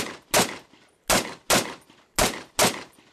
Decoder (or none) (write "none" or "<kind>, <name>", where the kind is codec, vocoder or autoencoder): none